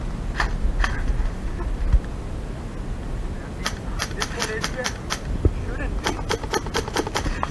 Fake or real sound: real